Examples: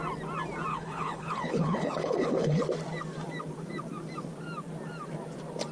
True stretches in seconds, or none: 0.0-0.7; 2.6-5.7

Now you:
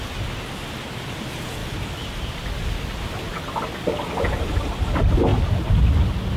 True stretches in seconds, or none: 0.0-1.6; 2.2-6.4

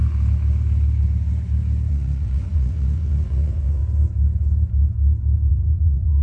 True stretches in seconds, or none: 0.0-1.9; 3.8-5.5